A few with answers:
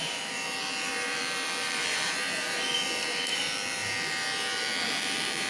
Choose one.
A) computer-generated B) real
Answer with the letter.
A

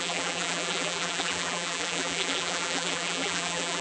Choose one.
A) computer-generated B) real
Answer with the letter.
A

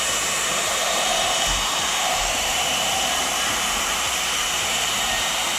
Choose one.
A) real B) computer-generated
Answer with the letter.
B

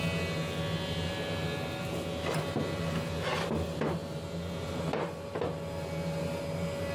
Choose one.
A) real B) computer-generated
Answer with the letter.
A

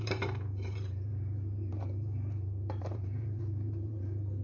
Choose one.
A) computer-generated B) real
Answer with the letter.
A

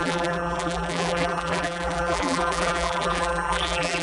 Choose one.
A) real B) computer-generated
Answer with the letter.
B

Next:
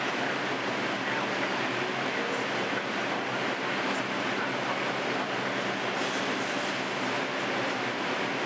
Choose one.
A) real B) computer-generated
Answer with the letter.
A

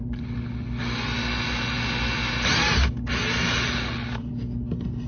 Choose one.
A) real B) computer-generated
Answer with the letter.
A